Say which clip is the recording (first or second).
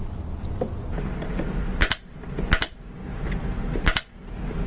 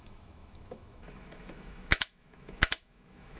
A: first